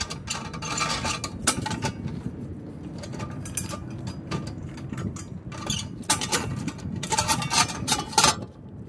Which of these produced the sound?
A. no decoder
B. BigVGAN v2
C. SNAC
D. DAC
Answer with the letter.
A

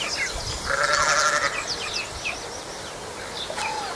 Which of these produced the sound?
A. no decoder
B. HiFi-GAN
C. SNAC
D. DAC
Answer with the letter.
A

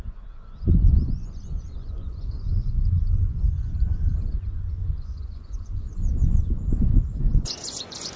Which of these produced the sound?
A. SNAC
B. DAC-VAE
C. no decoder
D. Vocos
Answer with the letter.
D